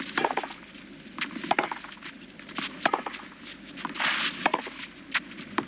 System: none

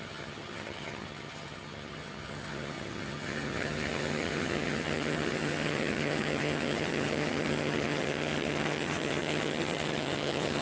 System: vocoder, HiFi-GAN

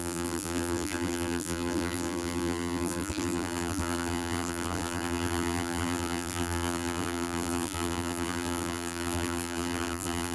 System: vocoder, BigVGAN v2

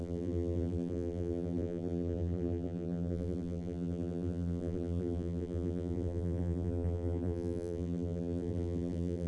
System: vocoder, BigVGAN v2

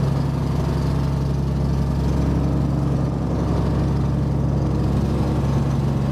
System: none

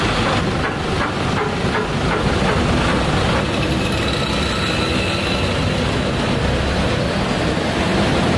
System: none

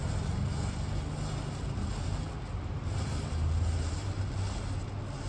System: none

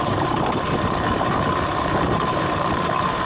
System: vocoder, BigVGAN v2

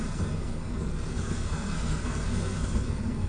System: codec, SNAC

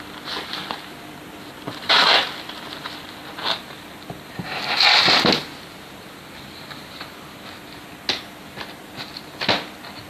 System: none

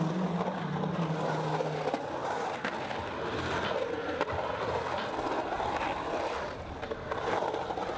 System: none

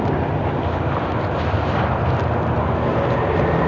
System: none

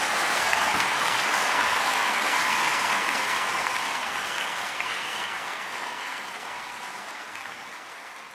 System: codec, SNAC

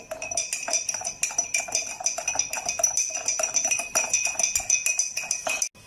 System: none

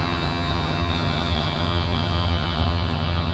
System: vocoder, HiFi-GAN